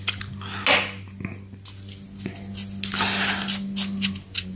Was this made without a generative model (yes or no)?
yes